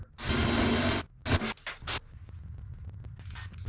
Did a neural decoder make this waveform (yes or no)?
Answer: no